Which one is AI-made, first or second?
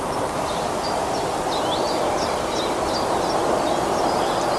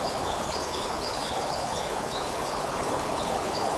second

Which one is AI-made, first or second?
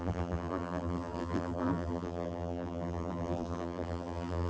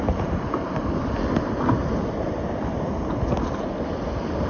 first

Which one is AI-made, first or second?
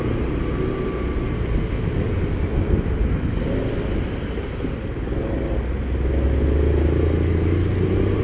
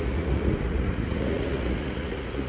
second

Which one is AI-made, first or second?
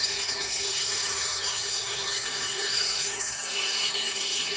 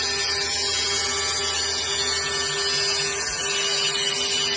first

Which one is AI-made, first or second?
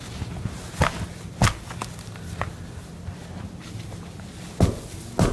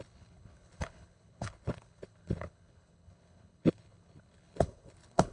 second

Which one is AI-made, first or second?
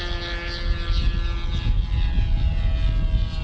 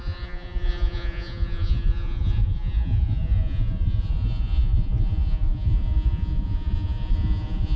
second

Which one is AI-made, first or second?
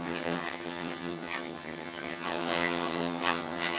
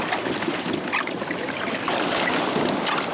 first